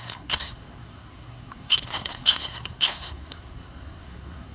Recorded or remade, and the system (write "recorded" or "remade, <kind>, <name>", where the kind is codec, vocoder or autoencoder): remade, codec, SNAC